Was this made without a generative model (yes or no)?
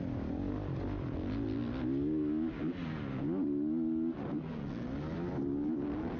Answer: yes